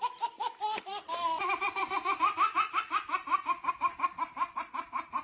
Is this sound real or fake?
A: fake